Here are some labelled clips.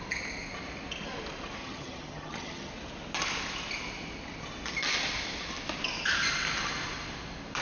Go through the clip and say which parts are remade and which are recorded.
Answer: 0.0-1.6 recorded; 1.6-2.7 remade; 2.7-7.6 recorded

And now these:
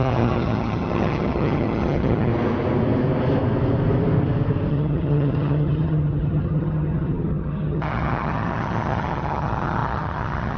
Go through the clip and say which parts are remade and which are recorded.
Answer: 0.0-2.3 remade; 2.3-4.7 recorded; 4.7-10.6 remade

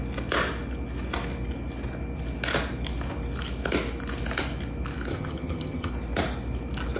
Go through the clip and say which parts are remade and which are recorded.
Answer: 0.0-5.1 recorded; 5.1-5.9 remade; 5.9-7.0 recorded

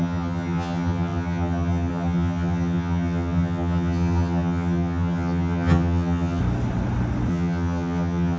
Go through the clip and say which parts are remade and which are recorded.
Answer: 0.0-6.4 remade; 6.4-7.3 recorded; 7.3-8.4 remade

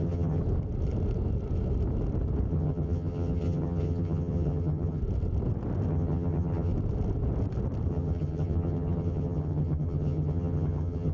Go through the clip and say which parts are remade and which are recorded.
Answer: 0.0-0.4 remade; 0.4-2.5 recorded; 2.5-5.0 remade; 5.0-5.9 recorded; 5.9-6.7 remade; 6.7-7.9 recorded; 7.9-11.1 remade

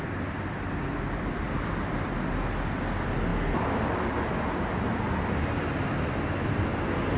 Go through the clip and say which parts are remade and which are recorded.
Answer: 0.0-7.2 recorded